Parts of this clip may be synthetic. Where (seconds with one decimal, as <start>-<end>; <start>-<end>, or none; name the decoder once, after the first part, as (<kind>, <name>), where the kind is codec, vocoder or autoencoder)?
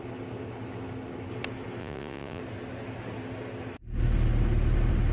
1.8-2.4 (vocoder, Vocos)